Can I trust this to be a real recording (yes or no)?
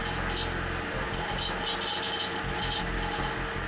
yes